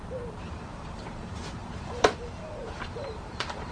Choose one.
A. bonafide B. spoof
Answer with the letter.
B